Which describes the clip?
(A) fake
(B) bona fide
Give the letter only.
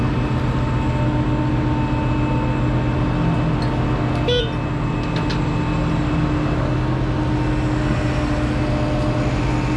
B